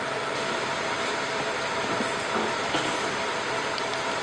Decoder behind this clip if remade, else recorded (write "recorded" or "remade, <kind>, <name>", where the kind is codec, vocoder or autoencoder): remade, vocoder, BigVGAN v2